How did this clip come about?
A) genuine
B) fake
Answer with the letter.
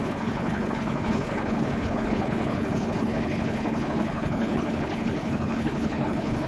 B